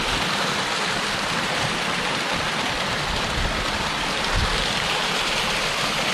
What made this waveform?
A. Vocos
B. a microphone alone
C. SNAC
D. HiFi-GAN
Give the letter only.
B